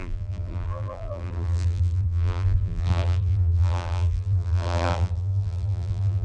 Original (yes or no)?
no